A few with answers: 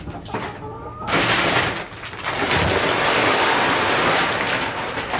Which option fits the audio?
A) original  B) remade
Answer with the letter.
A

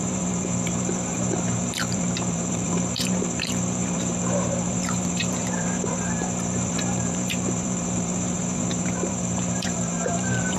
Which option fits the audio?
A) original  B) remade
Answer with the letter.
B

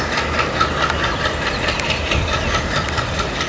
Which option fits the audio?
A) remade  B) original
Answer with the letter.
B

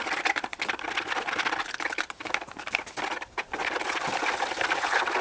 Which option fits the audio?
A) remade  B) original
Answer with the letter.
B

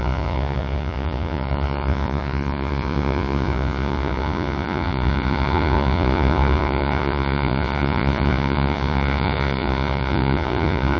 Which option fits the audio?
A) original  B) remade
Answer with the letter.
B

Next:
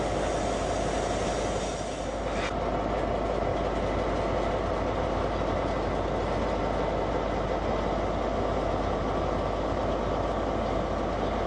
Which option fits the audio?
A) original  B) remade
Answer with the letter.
A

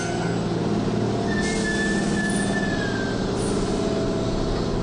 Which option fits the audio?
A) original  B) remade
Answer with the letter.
A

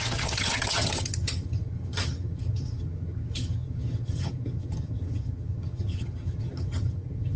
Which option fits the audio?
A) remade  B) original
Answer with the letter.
A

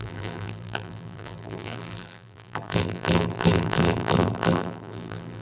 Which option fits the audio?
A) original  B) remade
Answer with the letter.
B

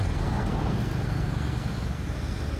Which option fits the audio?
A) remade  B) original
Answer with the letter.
A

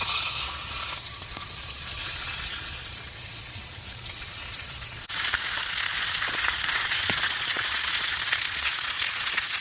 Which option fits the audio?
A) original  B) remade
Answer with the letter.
B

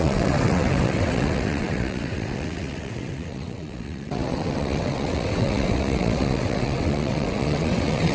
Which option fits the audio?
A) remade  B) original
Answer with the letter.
A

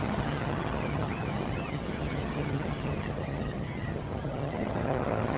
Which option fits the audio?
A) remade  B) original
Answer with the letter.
A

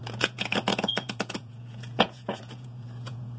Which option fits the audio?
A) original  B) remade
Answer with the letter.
B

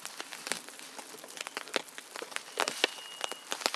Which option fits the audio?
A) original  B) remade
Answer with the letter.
A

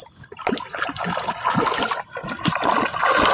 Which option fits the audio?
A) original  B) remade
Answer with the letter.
A